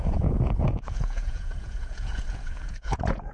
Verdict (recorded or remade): remade